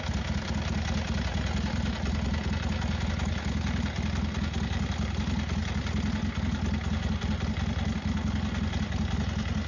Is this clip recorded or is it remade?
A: recorded